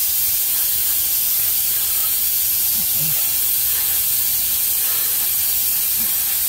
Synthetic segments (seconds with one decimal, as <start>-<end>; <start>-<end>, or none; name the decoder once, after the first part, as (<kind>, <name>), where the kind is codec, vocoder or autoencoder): 0.0-1.0 (vocoder, Vocos); 2.0-4.6